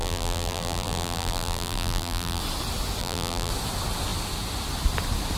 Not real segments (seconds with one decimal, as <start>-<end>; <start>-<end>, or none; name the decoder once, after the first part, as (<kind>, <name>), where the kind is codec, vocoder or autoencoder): 0.0-2.4 (vocoder, BigVGAN v2); 3.0-3.5